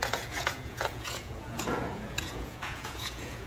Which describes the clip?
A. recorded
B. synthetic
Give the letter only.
B